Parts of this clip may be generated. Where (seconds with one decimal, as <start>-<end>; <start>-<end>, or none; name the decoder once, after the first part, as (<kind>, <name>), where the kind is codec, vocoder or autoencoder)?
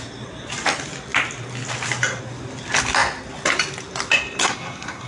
4.4-5.1 (codec, SNAC)